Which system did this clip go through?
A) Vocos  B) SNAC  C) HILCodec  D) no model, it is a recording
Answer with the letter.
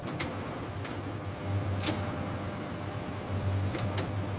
D